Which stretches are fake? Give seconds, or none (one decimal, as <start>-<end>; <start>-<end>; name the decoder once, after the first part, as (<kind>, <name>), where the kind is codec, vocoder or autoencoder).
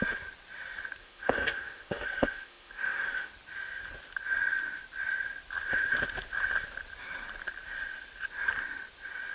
1.0-3.3 (autoencoder, DAC-VAE)